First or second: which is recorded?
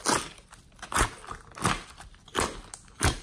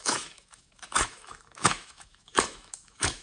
first